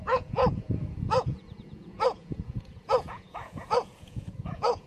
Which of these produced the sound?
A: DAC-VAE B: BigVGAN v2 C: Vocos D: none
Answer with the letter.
C